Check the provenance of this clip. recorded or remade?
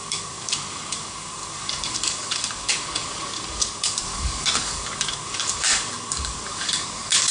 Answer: remade